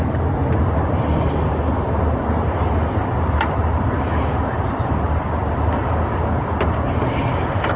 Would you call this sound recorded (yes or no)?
yes